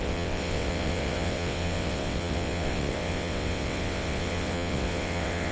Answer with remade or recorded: remade